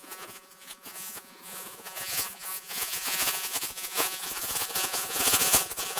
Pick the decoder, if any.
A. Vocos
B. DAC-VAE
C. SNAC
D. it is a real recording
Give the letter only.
A